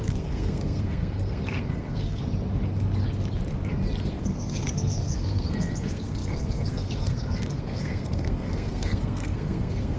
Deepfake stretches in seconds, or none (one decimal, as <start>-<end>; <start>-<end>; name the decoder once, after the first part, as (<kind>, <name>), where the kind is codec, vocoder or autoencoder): 0.0-2.2 (codec, SNAC); 4.0-10.0